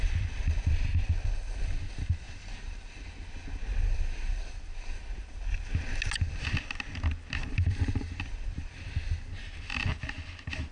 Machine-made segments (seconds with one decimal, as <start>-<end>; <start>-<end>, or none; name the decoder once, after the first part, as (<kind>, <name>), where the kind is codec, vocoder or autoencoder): 7.4-8.2 (vocoder, BigVGAN v2)